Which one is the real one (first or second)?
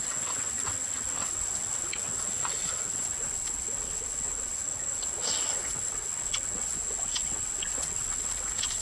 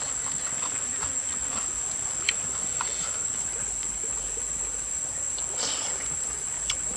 second